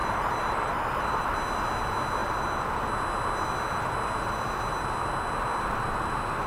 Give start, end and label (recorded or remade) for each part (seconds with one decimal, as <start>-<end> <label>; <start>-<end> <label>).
0.0-1.2 remade; 1.2-2.2 recorded; 2.2-2.8 remade; 2.8-6.5 recorded